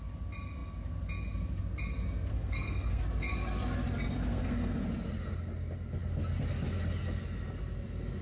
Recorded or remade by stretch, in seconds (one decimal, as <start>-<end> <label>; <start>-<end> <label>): 0.0-2.3 recorded; 2.3-3.0 remade; 3.0-4.3 recorded; 4.3-4.8 remade; 4.8-8.2 recorded

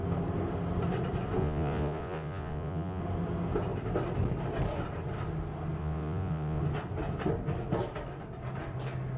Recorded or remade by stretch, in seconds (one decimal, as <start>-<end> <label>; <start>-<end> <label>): 0.0-1.4 recorded; 1.4-3.0 remade; 3.0-5.8 recorded; 5.8-6.6 remade; 6.6-9.2 recorded

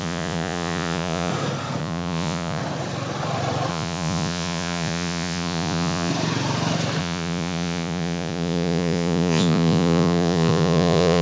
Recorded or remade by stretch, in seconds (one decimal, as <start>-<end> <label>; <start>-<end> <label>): 0.0-1.3 remade; 1.3-1.8 recorded; 1.8-2.6 remade; 2.6-3.7 recorded; 3.7-6.1 remade; 6.1-7.0 recorded; 7.0-11.2 remade

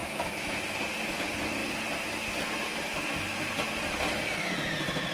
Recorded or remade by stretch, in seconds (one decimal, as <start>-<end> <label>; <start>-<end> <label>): 0.0-0.5 remade; 0.5-5.1 recorded

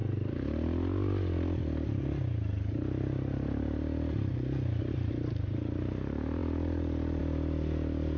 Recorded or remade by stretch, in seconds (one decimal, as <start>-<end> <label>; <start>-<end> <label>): 0.0-8.2 recorded

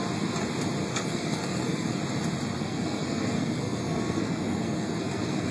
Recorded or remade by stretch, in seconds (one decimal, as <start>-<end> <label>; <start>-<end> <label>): 0.0-0.9 recorded; 0.9-1.9 remade; 1.9-2.6 recorded; 2.6-5.5 remade